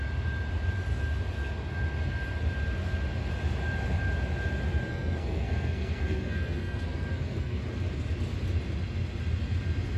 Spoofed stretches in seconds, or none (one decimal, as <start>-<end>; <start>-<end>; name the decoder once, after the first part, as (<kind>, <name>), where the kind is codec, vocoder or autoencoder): 4.9-7.6 (codec, SNAC)